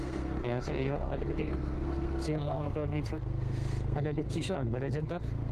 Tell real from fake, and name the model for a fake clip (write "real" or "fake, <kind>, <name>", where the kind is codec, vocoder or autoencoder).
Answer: fake, codec, SNAC